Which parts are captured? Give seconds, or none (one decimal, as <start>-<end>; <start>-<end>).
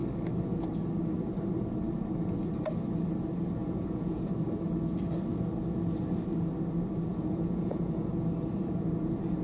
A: 0.0-3.6; 4.3-7.1; 8.1-9.4